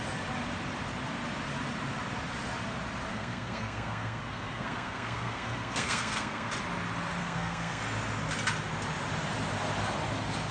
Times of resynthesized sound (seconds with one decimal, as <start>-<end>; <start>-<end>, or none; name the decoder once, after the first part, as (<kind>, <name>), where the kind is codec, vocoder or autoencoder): 3.1-6.5 (codec, SNAC); 7.2-7.8